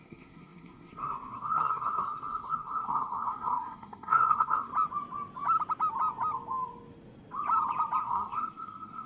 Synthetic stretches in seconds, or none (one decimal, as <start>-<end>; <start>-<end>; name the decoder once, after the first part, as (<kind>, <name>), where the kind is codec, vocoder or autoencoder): 0.0-4.7 (codec, SNAC); 8.0-9.1